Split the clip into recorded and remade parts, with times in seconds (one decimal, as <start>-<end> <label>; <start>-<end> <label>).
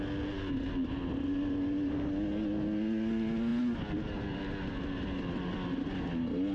0.0-6.5 recorded